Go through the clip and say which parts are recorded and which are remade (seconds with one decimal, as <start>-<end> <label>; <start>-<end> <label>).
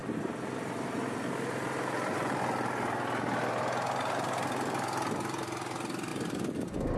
0.0-7.0 recorded